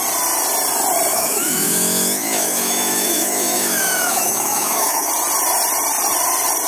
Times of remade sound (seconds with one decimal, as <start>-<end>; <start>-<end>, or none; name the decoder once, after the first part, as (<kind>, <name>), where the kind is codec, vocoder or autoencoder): 1.1-5.1 (autoencoder, DAC-VAE)